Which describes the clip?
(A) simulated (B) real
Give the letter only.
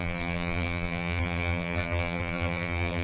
A